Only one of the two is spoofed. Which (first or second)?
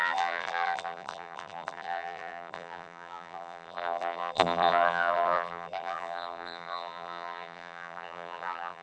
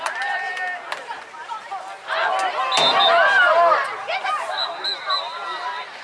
first